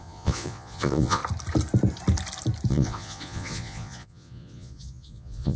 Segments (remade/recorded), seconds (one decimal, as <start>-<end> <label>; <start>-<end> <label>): 0.0-1.2 remade; 1.2-2.7 recorded; 2.7-5.6 remade